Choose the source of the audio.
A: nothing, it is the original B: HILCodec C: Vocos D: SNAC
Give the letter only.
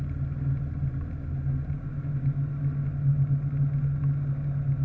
A